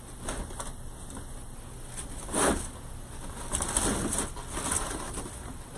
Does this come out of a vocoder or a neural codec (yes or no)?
no